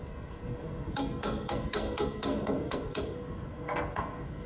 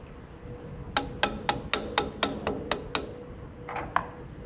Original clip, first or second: second